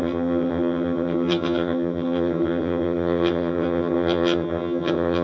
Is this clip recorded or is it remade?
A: remade